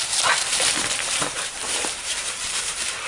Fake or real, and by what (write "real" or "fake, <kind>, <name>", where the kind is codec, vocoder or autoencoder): fake, vocoder, BigVGAN v2